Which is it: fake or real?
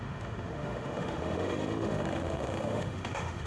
fake